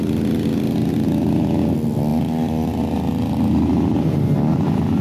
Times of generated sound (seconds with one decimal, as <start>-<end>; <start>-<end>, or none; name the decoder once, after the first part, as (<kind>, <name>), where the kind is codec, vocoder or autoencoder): none